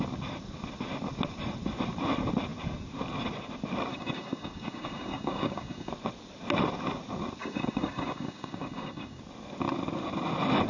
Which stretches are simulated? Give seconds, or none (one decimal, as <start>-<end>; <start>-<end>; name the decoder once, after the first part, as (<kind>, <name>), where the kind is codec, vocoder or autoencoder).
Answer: 3.9-5.9 (codec, DAC); 7.4-9.2